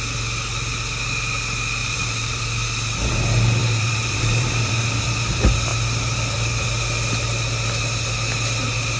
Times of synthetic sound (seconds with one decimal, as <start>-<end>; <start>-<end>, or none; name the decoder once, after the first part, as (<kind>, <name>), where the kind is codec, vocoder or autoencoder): 1.8-2.4 (vocoder, BigVGAN v2); 3.6-4.7